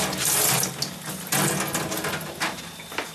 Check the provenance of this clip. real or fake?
real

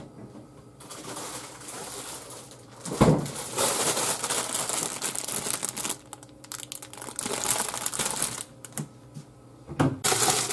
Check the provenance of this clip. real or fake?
real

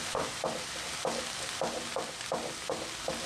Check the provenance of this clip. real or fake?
real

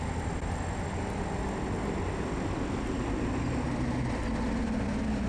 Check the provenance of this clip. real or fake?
real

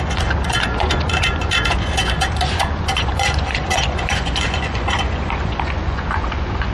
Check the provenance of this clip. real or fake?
fake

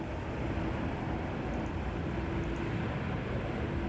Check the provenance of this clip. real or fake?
real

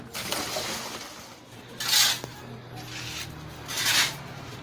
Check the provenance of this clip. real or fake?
real